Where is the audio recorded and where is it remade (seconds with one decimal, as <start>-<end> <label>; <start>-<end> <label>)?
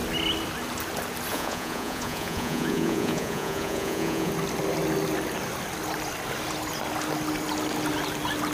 0.0-1.3 recorded; 1.3-4.3 remade; 4.3-8.5 recorded